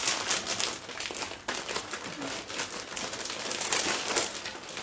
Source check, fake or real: real